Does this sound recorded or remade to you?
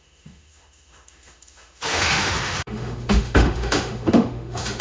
remade